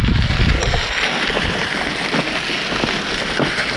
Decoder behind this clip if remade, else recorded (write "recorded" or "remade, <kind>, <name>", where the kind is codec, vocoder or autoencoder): recorded